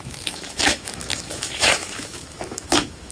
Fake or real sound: fake